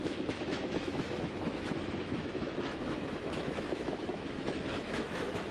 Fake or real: fake